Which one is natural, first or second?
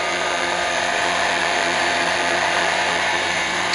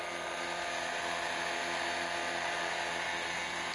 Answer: second